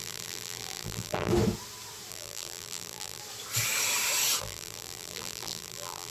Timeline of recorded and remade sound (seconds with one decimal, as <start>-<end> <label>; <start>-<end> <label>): 0.0-1.3 remade; 1.3-2.1 recorded; 2.1-3.2 remade; 3.2-4.4 recorded; 4.4-6.1 remade